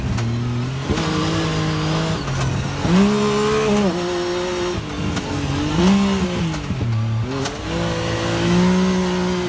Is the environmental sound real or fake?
real